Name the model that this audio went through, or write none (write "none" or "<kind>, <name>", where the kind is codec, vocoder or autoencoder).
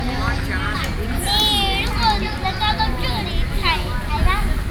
none